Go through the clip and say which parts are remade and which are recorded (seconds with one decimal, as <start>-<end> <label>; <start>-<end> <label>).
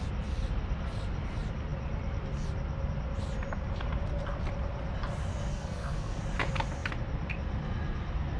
0.0-5.5 recorded; 5.5-6.2 remade; 6.2-8.4 recorded